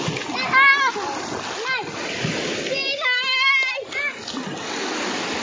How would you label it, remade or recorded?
recorded